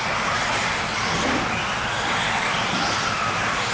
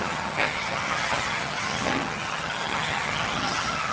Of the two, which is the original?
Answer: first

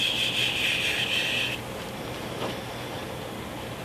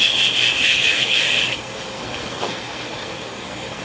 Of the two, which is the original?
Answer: first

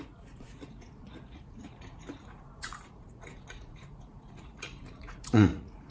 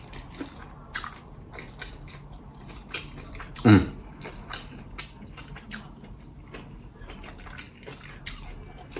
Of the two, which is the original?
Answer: second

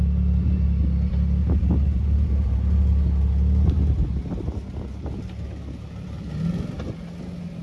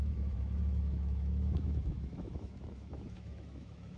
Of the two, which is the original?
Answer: first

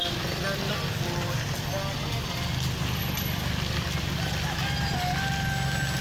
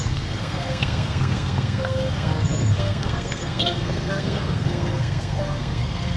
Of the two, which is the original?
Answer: first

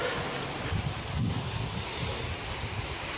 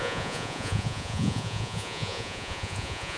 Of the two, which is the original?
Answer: first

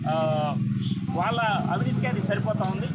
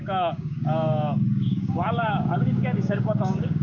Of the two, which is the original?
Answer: first